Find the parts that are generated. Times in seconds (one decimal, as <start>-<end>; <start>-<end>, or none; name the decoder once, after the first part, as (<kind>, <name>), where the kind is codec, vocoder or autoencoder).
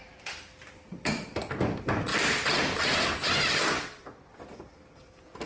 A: none